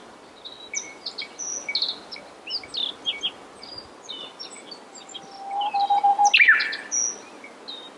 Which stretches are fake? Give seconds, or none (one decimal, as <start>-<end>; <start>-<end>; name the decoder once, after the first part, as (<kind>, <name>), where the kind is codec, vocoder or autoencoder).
none